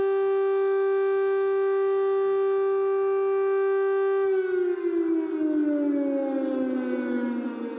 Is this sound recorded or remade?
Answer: recorded